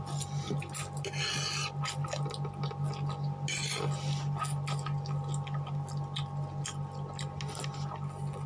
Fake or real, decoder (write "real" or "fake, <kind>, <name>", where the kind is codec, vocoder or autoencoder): real